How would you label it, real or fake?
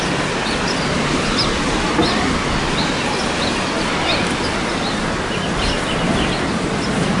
real